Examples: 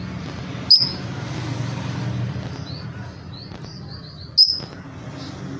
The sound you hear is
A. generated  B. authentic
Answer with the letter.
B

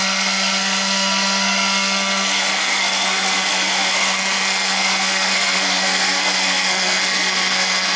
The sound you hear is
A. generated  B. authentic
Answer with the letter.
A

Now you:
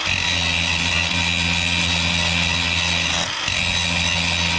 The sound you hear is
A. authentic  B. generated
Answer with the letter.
A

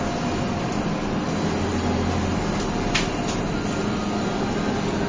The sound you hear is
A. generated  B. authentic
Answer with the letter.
B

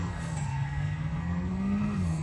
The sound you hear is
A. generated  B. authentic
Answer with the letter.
A